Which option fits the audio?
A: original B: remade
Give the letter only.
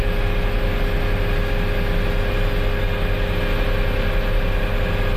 A